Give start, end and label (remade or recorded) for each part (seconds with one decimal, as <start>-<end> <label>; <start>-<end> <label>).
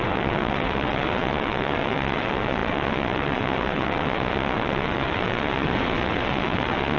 0.0-7.0 remade